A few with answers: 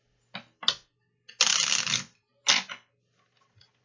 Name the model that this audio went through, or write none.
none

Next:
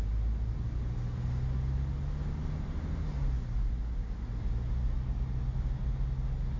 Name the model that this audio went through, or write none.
none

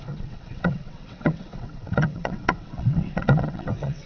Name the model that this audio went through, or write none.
vocoder, WaveNeXt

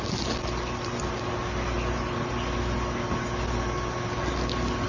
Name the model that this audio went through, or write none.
none